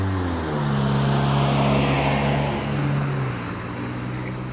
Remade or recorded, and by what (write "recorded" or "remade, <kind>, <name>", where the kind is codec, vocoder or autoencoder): recorded